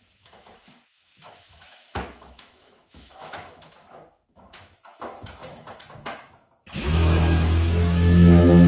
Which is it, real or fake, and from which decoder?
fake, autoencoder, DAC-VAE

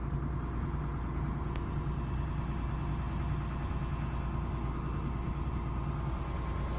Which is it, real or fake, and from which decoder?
real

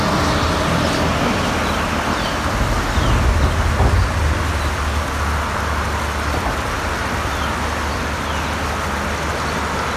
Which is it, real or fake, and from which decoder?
real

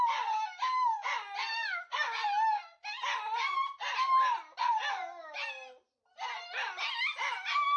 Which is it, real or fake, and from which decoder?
real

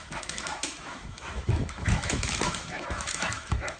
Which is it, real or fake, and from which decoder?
fake, autoencoder, DAC-VAE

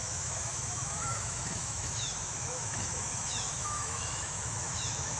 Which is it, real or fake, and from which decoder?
fake, autoencoder, DAC-VAE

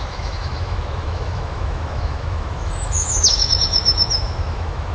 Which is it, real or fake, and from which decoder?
fake, autoencoder, DAC-VAE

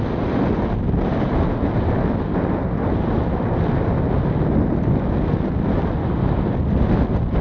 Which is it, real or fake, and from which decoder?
real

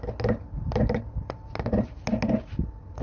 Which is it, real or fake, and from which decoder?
real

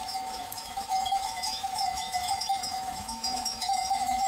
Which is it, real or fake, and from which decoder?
fake, autoencoder, DAC-VAE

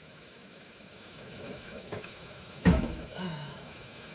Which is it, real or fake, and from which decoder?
fake, autoencoder, DAC-VAE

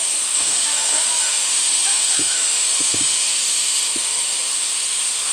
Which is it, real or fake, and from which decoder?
fake, autoencoder, DAC-VAE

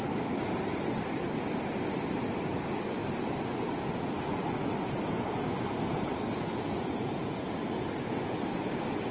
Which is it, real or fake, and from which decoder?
real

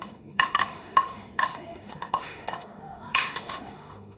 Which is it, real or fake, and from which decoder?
fake, autoencoder, DAC-VAE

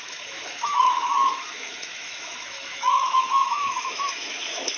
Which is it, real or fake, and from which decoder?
fake, autoencoder, DAC-VAE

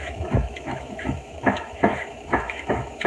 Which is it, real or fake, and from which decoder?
fake, autoencoder, DAC-VAE